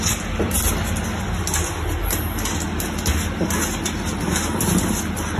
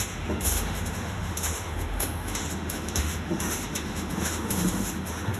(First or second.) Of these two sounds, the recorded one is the first